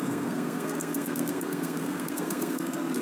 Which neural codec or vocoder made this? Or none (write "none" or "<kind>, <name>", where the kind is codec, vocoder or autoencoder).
codec, SNAC